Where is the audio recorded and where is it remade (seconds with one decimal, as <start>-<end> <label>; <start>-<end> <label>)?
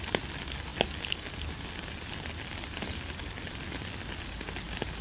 0.0-5.0 recorded